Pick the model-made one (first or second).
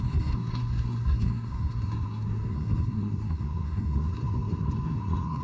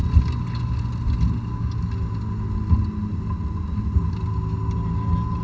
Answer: first